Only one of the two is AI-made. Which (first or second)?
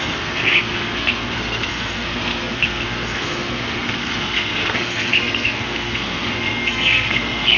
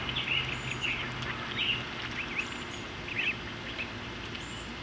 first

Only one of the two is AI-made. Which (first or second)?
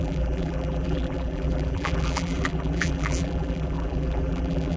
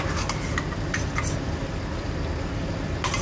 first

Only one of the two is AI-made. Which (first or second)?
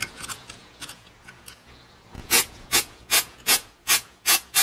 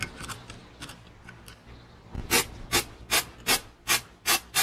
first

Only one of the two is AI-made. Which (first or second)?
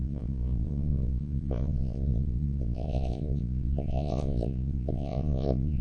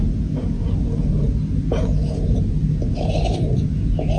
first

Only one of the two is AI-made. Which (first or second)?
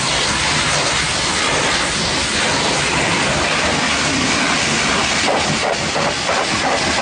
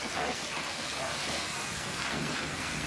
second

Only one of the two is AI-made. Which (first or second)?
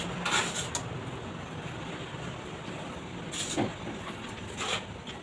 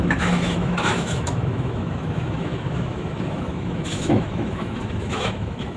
second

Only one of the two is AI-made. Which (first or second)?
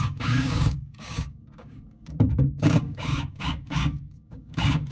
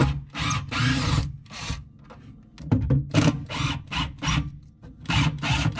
first